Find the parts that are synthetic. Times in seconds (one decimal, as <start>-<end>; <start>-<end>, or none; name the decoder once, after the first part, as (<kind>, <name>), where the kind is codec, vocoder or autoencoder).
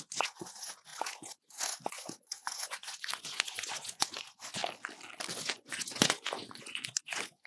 0.0-4.6 (vocoder, Vocos); 5.3-7.5